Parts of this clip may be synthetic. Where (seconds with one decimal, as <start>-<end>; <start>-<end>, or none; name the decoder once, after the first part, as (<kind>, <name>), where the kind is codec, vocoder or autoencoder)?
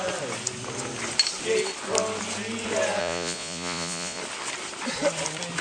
3.0-4.2 (vocoder, Vocos)